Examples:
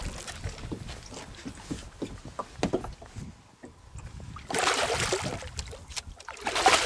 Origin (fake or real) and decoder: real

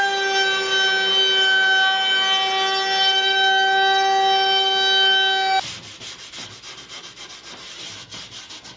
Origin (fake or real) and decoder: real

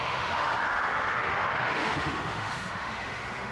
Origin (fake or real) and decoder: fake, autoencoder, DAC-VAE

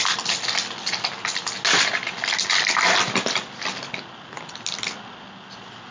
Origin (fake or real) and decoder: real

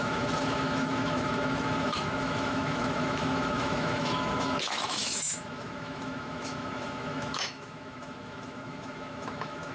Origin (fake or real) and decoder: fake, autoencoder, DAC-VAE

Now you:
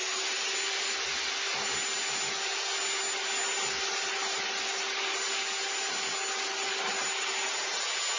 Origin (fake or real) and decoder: real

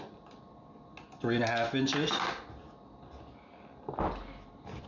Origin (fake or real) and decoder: real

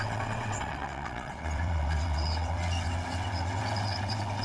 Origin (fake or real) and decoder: fake, vocoder, WaveNeXt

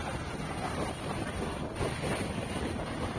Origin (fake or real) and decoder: real